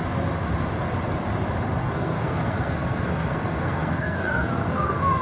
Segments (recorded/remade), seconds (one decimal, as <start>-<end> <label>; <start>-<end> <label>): 0.0-1.8 recorded; 1.8-5.2 remade